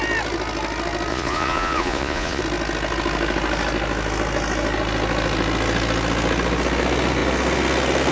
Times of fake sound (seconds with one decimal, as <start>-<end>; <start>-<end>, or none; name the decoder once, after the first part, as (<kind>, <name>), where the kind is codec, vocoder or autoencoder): 1.1-2.4 (vocoder, Vocos)